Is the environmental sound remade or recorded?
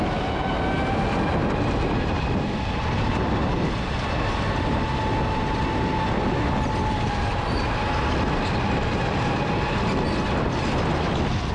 recorded